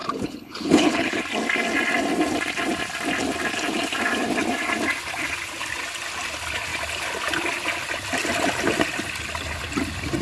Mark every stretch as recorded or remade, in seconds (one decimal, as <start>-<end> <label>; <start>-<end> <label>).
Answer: 0.0-1.2 remade; 1.2-10.2 recorded